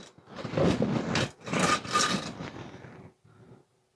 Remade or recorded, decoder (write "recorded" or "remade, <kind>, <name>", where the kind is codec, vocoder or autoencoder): recorded